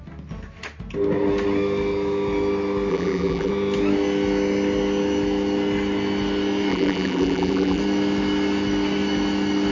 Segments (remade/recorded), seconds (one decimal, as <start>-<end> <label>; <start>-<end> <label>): 0.0-2.9 recorded; 2.9-3.5 remade; 3.5-6.7 recorded; 6.7-7.8 remade; 7.8-9.7 recorded